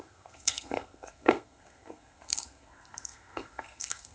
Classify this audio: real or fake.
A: fake